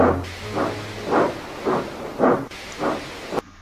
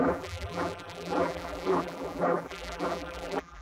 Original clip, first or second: first